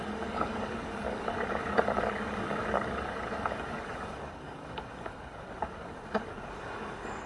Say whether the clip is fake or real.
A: fake